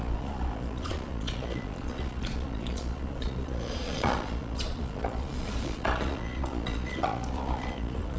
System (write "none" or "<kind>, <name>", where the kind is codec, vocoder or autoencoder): vocoder, Vocos